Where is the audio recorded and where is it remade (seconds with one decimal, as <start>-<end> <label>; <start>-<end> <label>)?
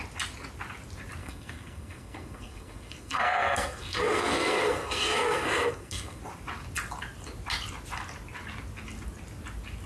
0.0-1.2 recorded; 1.2-6.2 remade; 6.2-9.9 recorded